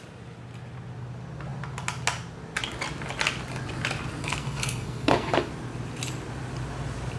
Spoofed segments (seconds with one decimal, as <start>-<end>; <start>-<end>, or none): 4.2-5.5